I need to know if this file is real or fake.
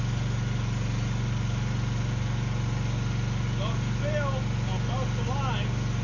real